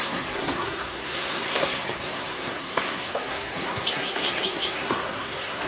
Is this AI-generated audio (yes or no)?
yes